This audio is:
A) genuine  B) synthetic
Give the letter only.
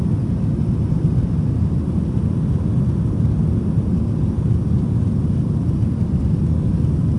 A